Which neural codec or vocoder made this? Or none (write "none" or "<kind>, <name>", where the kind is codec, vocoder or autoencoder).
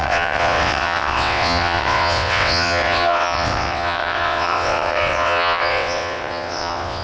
vocoder, WaveNeXt